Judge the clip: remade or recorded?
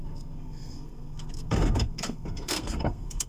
remade